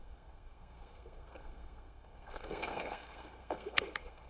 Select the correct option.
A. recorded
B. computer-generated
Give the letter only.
B